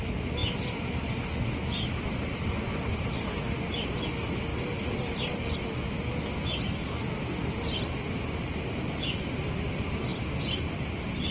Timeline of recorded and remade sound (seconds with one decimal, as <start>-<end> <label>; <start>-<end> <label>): 0.0-11.3 recorded